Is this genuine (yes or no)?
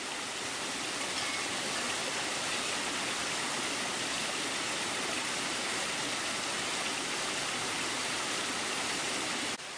yes